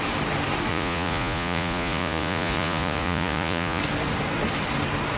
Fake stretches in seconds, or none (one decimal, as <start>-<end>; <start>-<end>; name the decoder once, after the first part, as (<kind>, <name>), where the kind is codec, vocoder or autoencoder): 0.7-3.8 (vocoder, Vocos)